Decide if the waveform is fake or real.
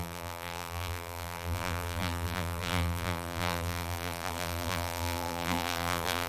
fake